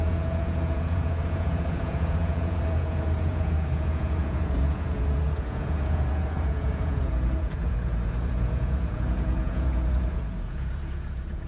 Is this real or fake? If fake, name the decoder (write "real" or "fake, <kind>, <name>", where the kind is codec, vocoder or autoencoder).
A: fake, vocoder, Vocos